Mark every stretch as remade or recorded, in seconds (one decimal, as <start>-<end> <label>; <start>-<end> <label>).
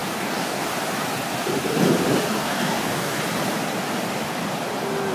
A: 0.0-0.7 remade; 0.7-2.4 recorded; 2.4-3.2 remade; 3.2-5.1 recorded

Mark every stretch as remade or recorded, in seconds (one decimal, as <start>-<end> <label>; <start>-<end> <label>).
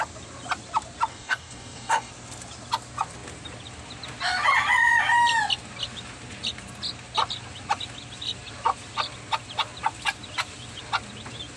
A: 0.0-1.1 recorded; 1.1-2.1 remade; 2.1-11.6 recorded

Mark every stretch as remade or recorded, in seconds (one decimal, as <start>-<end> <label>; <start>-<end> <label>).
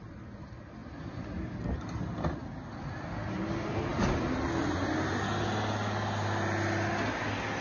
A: 0.0-7.6 recorded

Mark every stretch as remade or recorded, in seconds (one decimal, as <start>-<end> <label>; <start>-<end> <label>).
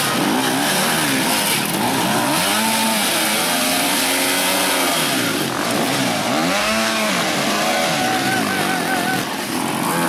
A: 0.0-6.6 recorded; 6.6-7.1 remade; 7.1-10.1 recorded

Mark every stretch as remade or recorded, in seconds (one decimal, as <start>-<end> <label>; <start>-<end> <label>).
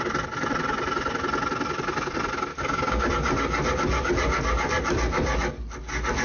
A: 0.0-2.5 recorded; 2.5-3.1 remade; 3.1-6.2 recorded